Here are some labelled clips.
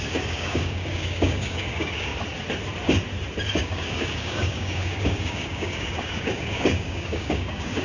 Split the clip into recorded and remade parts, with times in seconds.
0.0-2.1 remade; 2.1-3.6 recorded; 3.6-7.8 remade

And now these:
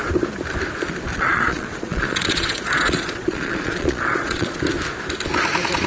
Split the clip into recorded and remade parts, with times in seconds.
0.0-1.1 recorded; 1.1-4.6 remade; 4.6-5.9 recorded

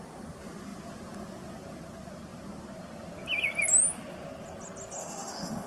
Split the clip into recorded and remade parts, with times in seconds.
0.0-5.0 recorded; 5.0-5.7 remade